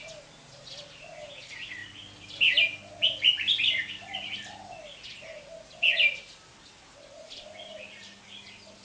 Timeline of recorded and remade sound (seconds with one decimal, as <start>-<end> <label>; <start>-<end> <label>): 0.0-1.3 recorded; 1.3-1.8 remade; 1.8-3.9 recorded; 3.9-8.8 remade